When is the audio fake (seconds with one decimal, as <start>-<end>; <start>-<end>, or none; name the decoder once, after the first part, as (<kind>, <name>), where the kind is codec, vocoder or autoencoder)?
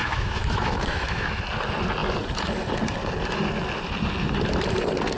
0.0-1.4 (autoencoder, DAC-VAE)